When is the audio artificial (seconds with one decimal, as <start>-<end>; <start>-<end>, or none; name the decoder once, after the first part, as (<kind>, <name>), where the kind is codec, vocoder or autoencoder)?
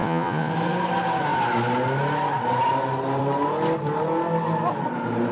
0.0-0.5 (vocoder, Vocos)